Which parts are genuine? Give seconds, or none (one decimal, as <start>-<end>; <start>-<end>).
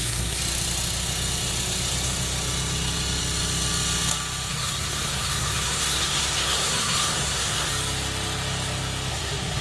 0.4-4.5; 7.7-9.1